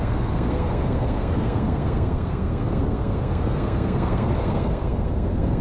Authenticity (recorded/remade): remade